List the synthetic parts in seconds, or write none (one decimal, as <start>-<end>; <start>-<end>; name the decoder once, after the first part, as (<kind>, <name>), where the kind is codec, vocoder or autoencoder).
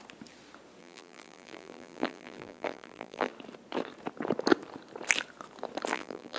0.8-3.3 (vocoder, BigVGAN v2); 5.9-6.4